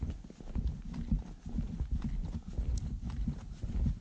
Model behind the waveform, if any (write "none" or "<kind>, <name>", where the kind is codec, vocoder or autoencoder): none